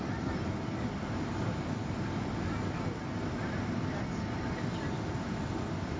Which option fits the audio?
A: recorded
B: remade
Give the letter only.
A